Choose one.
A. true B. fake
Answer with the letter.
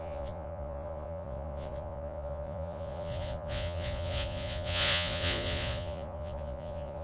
B